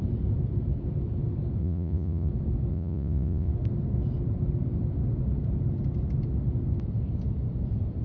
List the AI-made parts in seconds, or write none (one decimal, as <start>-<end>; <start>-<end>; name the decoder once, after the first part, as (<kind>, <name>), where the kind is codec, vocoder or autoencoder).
1.6-2.3 (vocoder, Vocos); 2.7-3.5